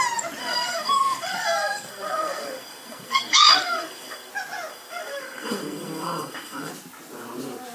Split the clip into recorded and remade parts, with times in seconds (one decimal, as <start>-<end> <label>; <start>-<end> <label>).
0.0-0.4 recorded; 0.4-4.3 remade; 4.3-4.7 recorded; 4.7-6.7 remade; 6.7-7.7 recorded